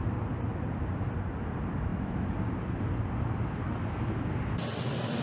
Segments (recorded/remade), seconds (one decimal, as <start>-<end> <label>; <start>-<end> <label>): 0.0-5.2 recorded